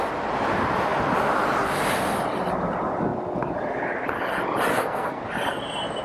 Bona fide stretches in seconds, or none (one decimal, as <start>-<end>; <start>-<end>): 0.0-4.7; 5.2-6.0